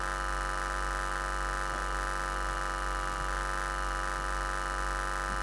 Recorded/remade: recorded